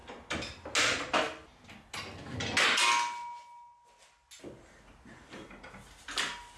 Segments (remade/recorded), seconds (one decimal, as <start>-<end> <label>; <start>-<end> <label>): 0.0-6.6 recorded